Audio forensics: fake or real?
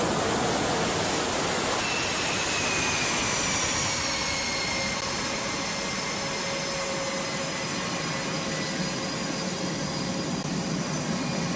real